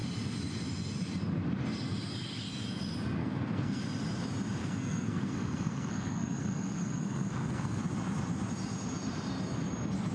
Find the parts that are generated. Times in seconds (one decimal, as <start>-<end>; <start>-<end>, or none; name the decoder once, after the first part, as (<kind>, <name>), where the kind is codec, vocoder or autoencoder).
3.2-3.8 (codec, SNAC); 4.6-7.8